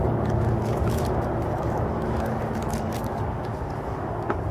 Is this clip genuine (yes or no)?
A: no